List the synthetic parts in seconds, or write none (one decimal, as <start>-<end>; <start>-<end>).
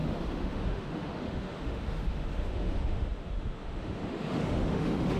0.0-5.2